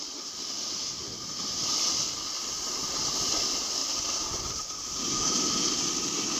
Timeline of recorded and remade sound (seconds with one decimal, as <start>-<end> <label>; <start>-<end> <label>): 0.0-5.1 recorded; 5.1-5.7 remade; 5.7-6.4 recorded